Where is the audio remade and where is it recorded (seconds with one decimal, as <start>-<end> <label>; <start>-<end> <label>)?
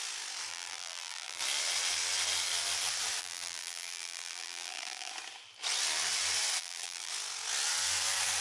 0.0-0.5 recorded; 0.5-1.4 remade; 1.4-3.2 recorded; 3.2-5.1 remade; 5.1-6.6 recorded; 6.6-7.1 remade; 7.1-8.4 recorded